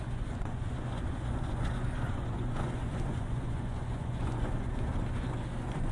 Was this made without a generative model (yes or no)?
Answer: no